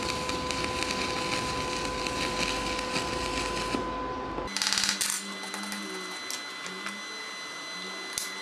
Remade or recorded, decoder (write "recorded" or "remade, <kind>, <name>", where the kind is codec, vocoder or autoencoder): recorded